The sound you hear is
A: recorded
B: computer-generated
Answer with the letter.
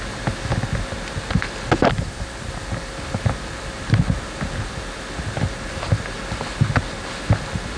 A